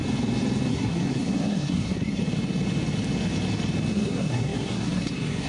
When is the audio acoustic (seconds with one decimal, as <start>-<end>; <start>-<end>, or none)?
0.0-0.7; 2.2-3.9